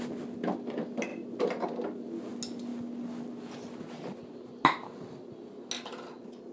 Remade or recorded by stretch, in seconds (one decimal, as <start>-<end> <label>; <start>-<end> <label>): 0.0-6.5 recorded